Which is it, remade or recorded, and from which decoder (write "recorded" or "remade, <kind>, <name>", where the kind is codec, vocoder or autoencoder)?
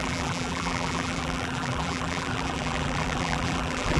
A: remade, vocoder, BigVGAN v2